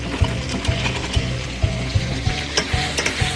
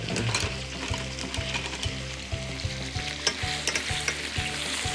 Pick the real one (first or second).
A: second